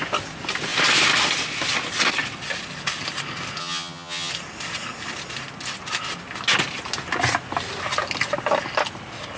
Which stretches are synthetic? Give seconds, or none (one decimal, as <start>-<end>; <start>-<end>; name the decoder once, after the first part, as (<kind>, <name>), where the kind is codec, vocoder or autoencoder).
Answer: 3.6-4.3 (vocoder, HiFi-GAN)